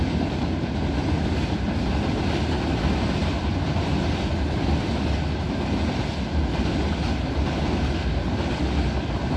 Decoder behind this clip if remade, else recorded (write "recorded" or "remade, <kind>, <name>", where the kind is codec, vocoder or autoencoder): recorded